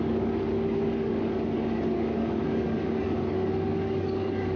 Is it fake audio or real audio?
fake